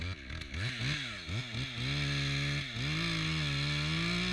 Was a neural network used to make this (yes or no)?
no